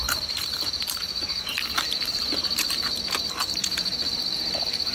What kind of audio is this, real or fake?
fake